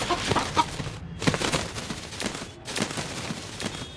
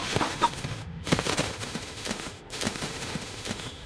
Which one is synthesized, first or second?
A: second